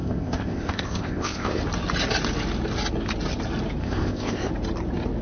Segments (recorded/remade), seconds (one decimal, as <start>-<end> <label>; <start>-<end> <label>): 0.0-1.6 remade; 1.6-3.8 recorded; 3.8-4.5 remade; 4.5-5.2 recorded